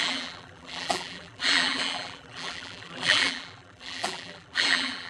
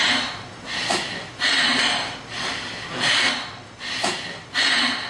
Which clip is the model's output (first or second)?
first